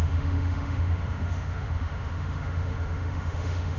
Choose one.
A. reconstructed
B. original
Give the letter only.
A